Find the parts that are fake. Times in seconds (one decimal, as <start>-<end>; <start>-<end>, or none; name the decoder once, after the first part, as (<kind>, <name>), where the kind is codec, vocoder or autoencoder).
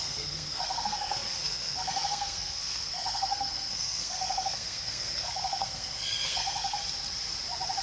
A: 0.0-6.8 (codec, SNAC)